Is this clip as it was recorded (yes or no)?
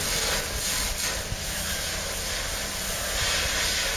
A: yes